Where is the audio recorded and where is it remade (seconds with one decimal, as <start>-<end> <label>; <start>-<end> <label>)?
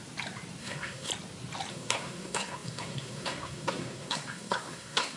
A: 0.0-0.6 recorded; 0.6-1.1 remade; 1.1-1.7 recorded; 1.7-5.2 remade